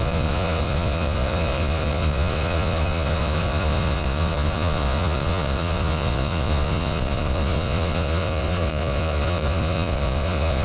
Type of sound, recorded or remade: remade